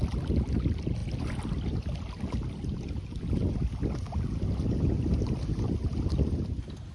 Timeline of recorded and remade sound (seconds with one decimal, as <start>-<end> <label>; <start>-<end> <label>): 0.0-6.9 recorded